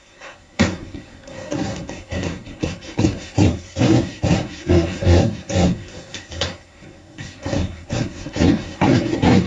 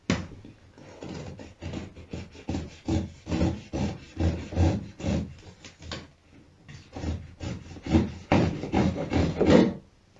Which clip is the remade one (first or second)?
first